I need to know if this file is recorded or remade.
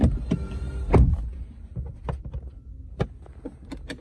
recorded